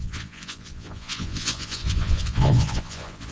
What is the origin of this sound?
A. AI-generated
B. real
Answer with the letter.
A